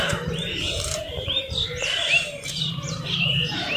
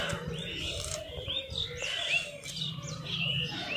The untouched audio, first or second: second